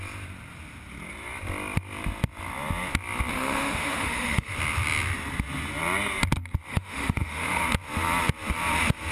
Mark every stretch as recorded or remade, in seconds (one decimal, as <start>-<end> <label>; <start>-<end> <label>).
0.0-3.3 recorded; 3.3-4.5 remade; 4.5-6.7 recorded; 6.7-7.6 remade; 7.6-9.1 recorded